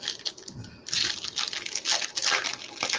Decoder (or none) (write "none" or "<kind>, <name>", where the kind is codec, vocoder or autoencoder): none